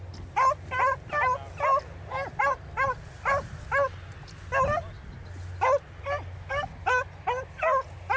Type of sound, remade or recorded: recorded